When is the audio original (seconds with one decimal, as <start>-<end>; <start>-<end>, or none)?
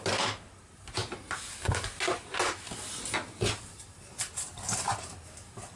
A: 0.0-5.8